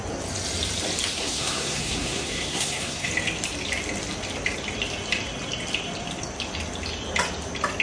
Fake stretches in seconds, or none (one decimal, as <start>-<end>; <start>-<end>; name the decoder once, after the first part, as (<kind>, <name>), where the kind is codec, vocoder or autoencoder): 1.2-3.1 (codec, SNAC)